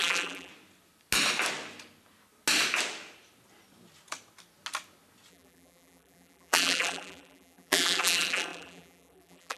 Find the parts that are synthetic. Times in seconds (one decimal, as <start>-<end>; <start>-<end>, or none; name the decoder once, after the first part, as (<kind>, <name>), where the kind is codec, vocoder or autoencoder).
0.0-0.5 (vocoder, BigVGAN v2); 5.3-9.6